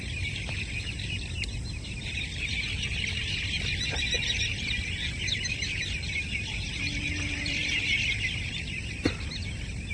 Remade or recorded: recorded